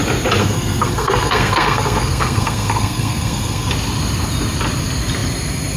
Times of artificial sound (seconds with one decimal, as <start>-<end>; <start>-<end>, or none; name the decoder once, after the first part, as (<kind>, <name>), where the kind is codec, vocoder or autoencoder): 0.4-3.7 (codec, SNAC)